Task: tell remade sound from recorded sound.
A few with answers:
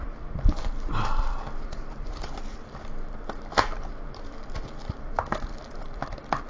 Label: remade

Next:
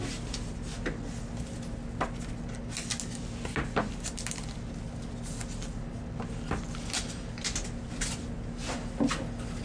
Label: recorded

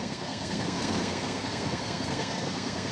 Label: remade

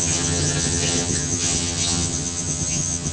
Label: remade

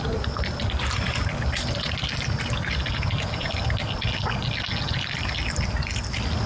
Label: recorded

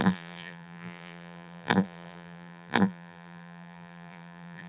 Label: remade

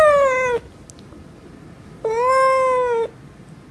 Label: recorded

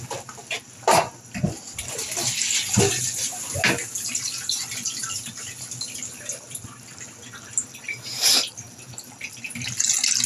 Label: recorded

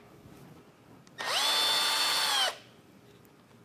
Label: recorded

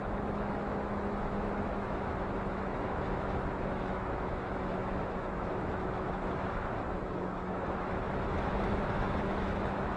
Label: remade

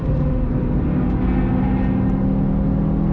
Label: recorded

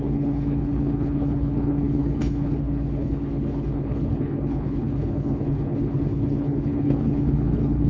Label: remade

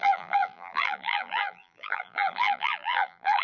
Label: remade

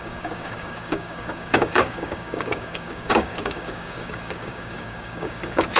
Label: remade